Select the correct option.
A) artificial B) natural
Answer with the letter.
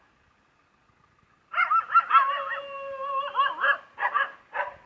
B